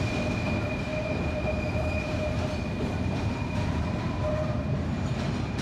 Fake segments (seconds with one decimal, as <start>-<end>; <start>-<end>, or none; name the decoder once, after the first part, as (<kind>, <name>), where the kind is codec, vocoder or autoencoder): 0.0-5.6 (vocoder, BigVGAN v2)